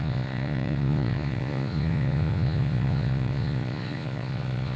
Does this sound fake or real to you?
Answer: fake